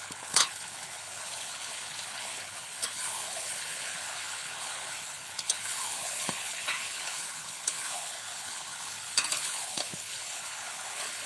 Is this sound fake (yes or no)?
yes